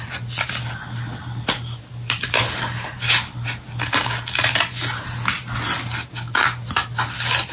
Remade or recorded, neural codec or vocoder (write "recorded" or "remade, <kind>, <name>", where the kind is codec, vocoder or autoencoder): recorded